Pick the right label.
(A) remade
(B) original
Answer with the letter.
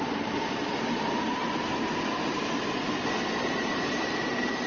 A